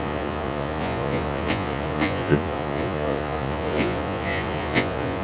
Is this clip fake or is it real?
fake